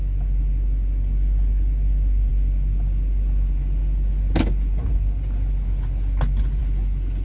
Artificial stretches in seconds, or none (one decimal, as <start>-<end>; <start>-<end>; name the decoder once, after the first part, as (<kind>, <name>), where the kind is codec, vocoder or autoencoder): none